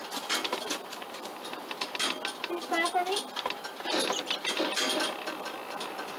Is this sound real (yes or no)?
yes